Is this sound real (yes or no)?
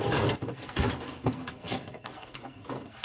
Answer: no